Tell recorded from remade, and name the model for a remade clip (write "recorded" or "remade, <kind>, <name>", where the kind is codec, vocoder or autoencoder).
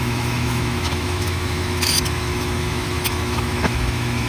remade, autoencoder, DAC-VAE